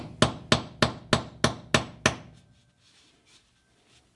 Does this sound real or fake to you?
real